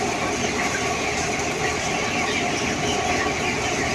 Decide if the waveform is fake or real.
real